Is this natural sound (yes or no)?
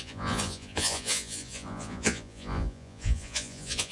no